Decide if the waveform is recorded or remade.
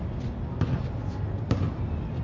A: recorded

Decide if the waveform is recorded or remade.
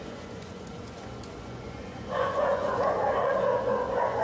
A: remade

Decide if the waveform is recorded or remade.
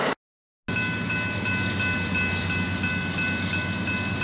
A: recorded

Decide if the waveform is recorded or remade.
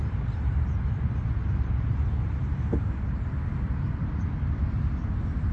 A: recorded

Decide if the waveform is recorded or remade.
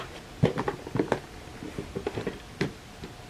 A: recorded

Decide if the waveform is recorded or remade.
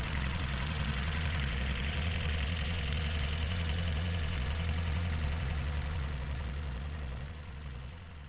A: remade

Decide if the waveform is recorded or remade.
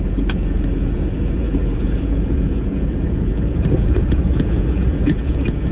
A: remade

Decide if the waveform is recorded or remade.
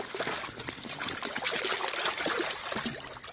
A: recorded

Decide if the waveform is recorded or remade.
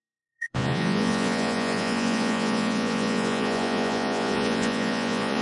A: remade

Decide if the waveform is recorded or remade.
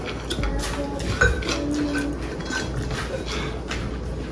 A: recorded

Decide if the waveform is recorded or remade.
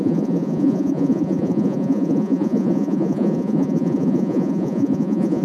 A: remade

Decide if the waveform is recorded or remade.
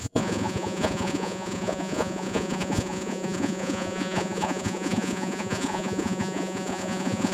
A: remade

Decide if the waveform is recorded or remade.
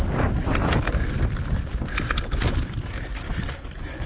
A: recorded